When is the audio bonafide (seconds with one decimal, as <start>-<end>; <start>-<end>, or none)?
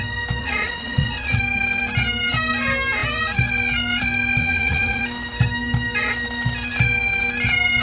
0.0-0.4; 1.4-4.4; 5.0-7.8